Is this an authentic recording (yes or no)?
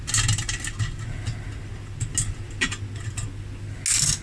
yes